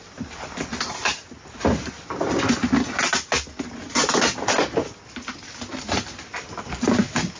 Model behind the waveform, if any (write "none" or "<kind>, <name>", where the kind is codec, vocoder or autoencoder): none